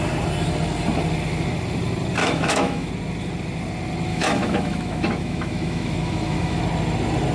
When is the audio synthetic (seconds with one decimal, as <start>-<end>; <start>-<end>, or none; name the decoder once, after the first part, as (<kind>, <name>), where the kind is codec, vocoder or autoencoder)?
2.2-2.9 (autoencoder, DAC-VAE); 4.1-6.6